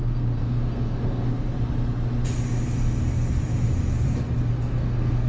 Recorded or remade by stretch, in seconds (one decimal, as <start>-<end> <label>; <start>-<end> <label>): 0.0-1.3 remade; 1.3-4.5 recorded; 4.5-5.3 remade